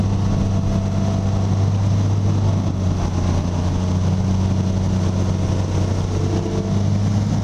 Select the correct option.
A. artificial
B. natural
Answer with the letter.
B